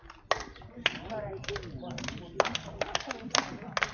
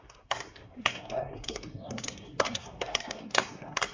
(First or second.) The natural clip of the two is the first